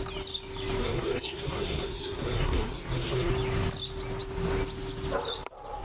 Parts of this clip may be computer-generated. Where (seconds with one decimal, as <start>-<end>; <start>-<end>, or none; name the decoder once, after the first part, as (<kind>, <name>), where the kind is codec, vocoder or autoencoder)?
0.8-3.3 (codec, SNAC)